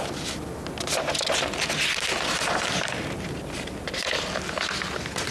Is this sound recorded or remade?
recorded